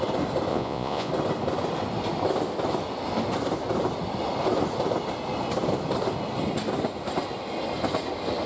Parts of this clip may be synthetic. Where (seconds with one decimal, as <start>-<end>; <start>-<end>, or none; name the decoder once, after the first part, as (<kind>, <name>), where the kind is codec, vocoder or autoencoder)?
0.5-1.1 (vocoder, Vocos)